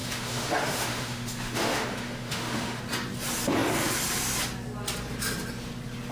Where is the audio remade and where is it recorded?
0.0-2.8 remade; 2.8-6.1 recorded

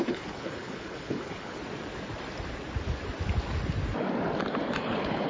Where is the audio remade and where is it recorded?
0.0-1.6 remade; 1.6-4.8 recorded; 4.8-5.3 remade

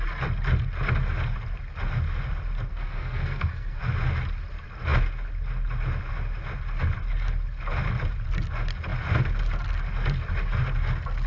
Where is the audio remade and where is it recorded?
0.0-2.7 recorded; 2.7-3.8 remade; 3.8-11.3 recorded

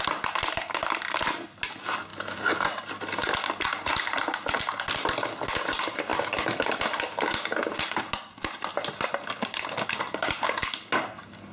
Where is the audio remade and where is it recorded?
0.0-11.5 recorded